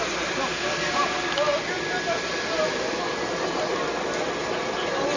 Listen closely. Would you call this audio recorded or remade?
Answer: recorded